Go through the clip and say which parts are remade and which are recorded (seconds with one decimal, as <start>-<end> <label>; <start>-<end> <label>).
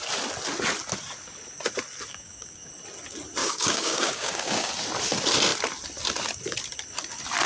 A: 0.0-2.1 recorded; 2.1-2.7 remade; 2.7-3.4 recorded; 3.4-4.7 remade; 4.7-7.5 recorded